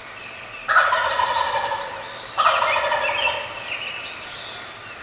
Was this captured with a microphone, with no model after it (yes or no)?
yes